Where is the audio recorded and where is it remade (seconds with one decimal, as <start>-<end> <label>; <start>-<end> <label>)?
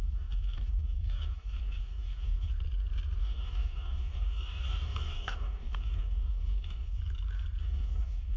0.0-2.5 remade; 2.5-3.2 recorded; 3.2-7.0 remade; 7.0-7.6 recorded; 7.6-8.4 remade